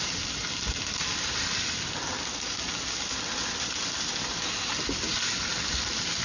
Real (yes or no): yes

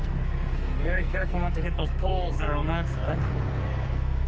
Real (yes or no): no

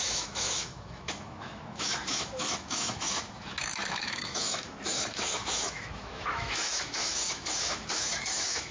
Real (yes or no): no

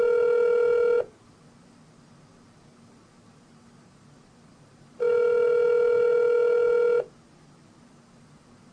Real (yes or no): yes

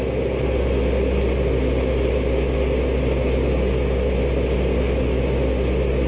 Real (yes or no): yes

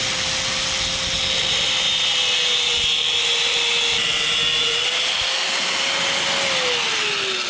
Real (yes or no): yes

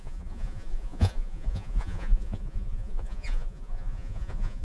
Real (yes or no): no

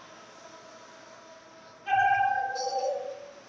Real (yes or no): yes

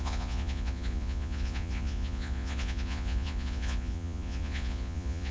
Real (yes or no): no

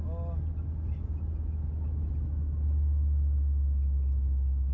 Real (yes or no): yes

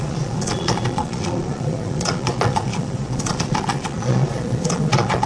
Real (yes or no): no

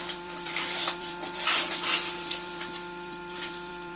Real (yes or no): no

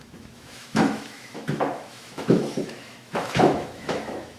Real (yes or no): no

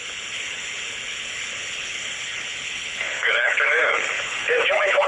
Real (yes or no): no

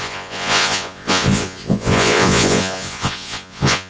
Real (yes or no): no